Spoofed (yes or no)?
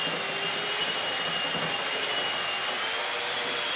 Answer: no